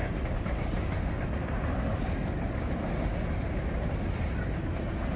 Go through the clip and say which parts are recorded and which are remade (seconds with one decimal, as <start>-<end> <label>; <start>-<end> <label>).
0.0-5.2 recorded